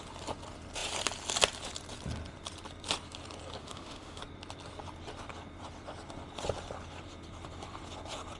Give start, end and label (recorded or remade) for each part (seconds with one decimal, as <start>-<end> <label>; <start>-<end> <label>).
0.0-3.6 recorded; 3.6-4.2 remade; 4.2-8.4 recorded